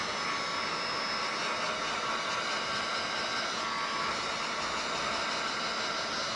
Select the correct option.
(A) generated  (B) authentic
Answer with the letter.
B